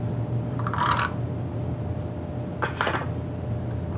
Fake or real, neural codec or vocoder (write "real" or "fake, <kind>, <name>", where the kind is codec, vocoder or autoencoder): real